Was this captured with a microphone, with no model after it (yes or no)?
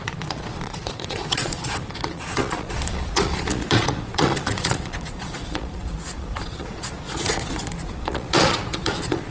no